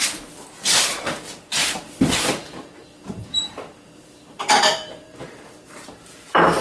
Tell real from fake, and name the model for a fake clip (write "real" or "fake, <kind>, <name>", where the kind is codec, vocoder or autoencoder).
fake, vocoder, BigVGAN v2